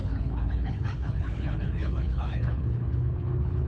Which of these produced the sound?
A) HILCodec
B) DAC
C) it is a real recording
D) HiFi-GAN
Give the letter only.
A